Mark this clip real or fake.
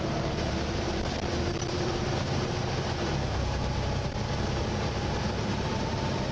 fake